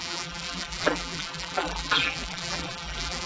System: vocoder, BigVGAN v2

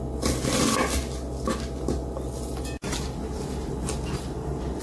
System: none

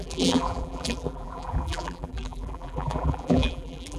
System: vocoder, BigVGAN v2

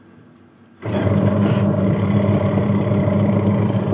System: vocoder, BigVGAN v2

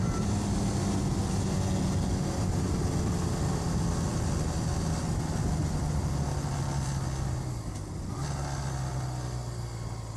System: none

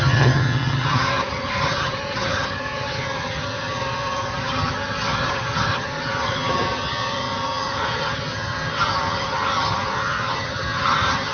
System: vocoder, HiFi-GAN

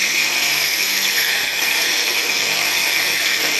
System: codec, SNAC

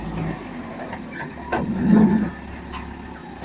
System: none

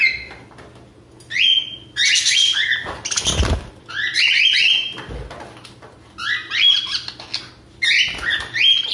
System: none